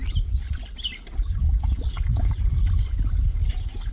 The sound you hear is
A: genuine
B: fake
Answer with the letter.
A